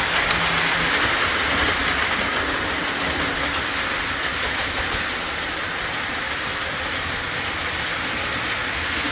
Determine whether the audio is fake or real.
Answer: real